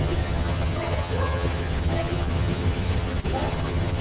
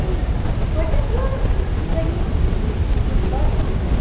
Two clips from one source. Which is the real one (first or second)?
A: second